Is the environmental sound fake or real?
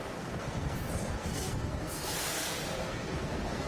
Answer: fake